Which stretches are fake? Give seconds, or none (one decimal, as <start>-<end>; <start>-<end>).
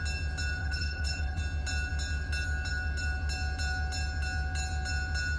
0.6-1.4